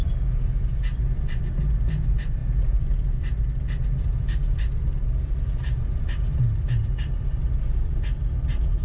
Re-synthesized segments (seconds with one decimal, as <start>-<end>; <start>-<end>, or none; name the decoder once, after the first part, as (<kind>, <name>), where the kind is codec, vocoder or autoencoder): 2.4-2.9 (vocoder, BigVGAN v2)